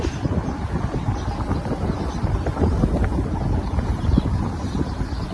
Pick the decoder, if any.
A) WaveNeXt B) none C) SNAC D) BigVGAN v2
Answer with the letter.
B